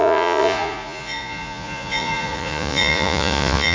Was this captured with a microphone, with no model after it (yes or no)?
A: no